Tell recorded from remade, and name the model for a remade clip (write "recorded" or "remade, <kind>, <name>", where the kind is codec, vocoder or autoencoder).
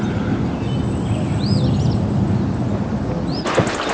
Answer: recorded